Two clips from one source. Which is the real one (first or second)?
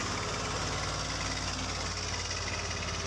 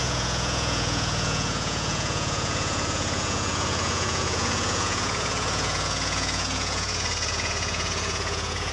first